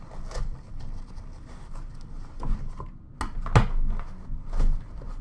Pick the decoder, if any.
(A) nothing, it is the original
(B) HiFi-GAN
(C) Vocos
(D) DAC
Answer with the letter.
A